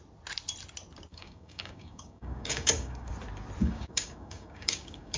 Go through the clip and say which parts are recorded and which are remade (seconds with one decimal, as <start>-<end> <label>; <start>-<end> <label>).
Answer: 0.0-1.1 recorded; 1.1-3.1 remade; 3.1-3.6 recorded; 3.6-5.2 remade